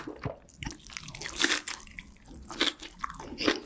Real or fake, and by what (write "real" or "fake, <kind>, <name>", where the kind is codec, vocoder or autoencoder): real